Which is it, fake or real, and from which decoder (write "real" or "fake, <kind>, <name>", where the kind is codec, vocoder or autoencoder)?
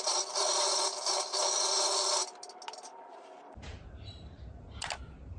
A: real